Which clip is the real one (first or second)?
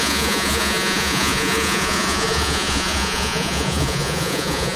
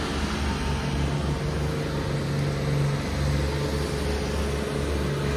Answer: second